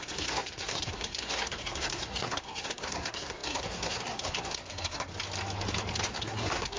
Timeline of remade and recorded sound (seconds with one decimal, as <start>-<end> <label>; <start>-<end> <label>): 0.0-5.1 remade; 5.1-6.1 recorded; 6.1-6.8 remade